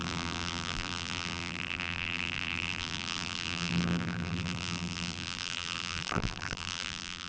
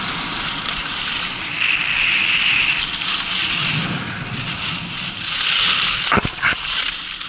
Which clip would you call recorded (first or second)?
second